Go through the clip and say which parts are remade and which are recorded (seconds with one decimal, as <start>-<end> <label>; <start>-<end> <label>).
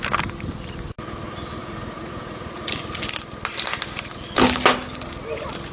0.0-1.6 recorded; 1.6-2.7 remade; 2.7-5.7 recorded